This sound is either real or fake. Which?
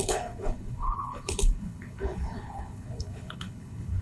fake